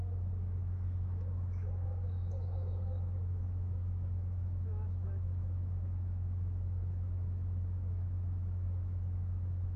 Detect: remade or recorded remade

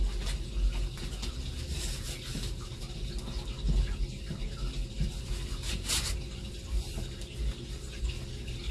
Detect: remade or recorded recorded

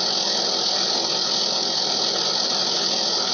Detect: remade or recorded recorded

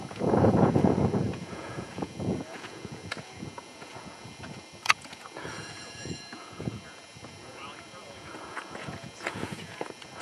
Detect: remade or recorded remade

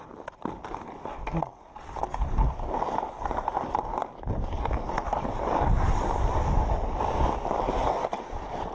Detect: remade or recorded recorded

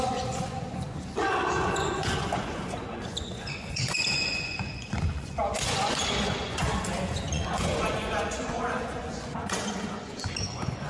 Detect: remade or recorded remade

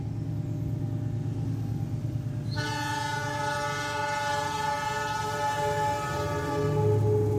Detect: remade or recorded recorded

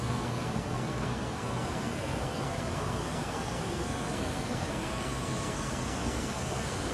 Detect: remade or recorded remade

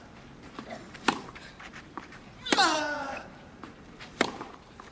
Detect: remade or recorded remade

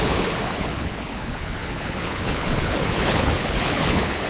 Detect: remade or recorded remade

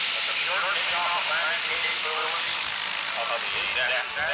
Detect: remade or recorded recorded